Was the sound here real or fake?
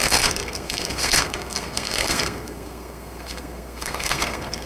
fake